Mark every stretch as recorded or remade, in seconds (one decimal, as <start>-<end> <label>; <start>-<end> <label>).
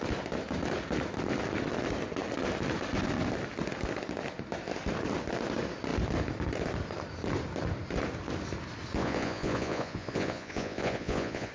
0.0-9.0 recorded; 9.0-11.5 remade